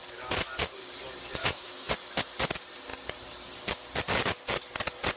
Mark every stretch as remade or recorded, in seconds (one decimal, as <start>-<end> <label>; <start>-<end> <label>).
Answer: 0.0-1.4 recorded; 1.4-1.9 remade; 1.9-5.2 recorded